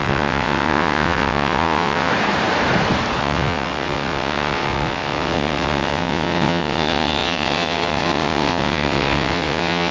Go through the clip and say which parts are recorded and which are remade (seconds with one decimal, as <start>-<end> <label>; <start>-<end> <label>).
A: 0.0-2.1 remade; 2.1-3.2 recorded; 3.2-9.9 remade

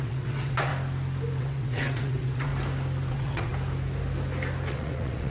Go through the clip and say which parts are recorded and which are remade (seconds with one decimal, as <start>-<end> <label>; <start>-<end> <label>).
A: 0.0-0.7 remade; 0.7-1.4 recorded; 1.4-2.5 remade; 2.5-3.1 recorded; 3.1-3.5 remade; 3.5-4.7 recorded; 4.7-5.3 remade